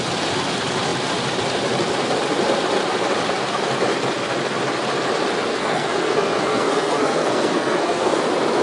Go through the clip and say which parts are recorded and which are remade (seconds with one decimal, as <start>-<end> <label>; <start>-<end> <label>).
0.0-5.5 recorded; 5.5-8.2 remade; 8.2-8.6 recorded